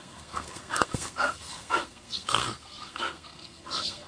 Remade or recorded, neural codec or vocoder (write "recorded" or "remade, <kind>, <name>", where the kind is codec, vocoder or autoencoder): remade, codec, SNAC